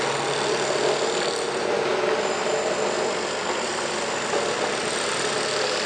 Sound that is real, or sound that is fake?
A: real